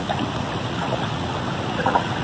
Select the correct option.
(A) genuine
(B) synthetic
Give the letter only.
B